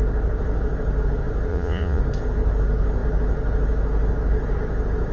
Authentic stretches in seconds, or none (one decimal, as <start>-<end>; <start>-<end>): 0.0-1.5; 2.0-5.1